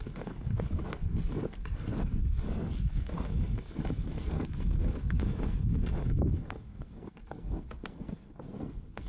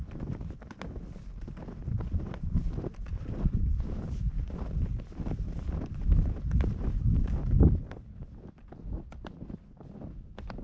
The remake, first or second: first